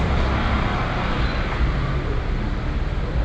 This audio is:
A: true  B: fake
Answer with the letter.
A